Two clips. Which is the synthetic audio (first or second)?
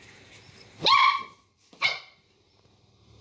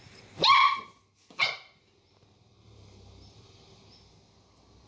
first